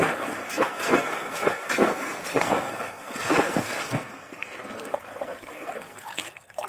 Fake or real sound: fake